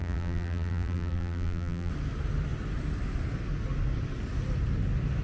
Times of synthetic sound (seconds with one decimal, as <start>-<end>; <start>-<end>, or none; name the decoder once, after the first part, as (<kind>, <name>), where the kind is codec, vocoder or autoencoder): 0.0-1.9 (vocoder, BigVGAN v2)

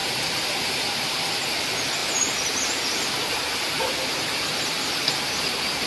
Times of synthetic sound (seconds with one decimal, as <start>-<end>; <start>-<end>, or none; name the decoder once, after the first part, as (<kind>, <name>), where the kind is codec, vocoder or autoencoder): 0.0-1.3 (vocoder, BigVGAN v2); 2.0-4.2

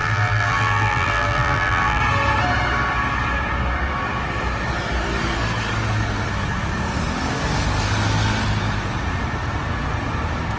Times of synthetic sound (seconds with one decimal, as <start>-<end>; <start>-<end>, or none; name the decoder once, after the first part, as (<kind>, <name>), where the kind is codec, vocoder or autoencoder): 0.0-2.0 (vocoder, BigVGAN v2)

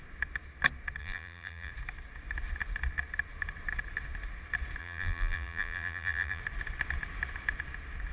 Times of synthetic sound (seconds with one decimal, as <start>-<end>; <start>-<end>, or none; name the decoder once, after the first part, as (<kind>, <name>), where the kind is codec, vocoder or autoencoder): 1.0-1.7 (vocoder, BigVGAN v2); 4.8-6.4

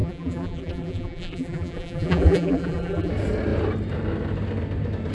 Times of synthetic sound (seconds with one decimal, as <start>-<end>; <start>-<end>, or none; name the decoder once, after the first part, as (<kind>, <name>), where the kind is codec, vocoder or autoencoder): 0.0-3.1 (vocoder, BigVGAN v2)